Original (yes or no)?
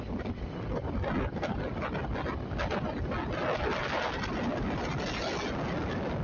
yes